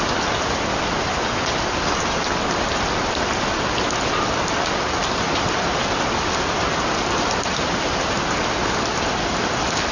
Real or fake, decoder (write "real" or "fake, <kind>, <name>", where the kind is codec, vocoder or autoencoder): real